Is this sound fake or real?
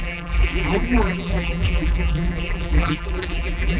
fake